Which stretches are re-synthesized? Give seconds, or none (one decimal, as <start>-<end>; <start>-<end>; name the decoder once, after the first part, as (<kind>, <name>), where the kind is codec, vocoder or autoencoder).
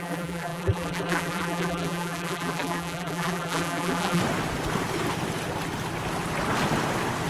0.0-4.2 (vocoder, BigVGAN v2)